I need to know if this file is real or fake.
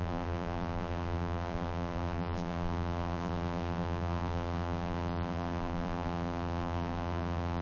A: fake